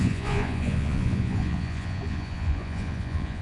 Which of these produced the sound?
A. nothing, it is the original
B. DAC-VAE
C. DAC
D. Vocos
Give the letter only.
D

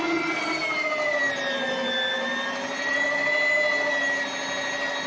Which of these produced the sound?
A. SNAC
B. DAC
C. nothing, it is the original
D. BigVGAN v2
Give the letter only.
C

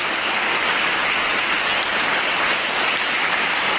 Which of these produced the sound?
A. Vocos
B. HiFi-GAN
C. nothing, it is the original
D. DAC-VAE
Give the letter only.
C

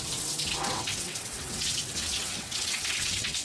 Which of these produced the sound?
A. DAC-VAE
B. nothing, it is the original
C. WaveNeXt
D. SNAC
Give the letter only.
C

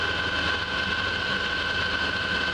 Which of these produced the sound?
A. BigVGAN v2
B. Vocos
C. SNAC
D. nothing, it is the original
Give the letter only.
D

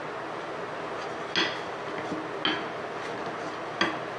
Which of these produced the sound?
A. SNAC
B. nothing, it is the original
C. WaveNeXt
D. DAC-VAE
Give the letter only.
B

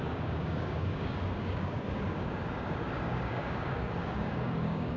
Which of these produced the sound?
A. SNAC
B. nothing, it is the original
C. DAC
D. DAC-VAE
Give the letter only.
C